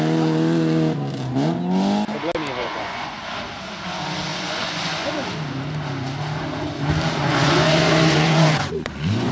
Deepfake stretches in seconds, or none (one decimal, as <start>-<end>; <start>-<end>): 2.6-3.2; 4.3-5.1; 7.2-9.3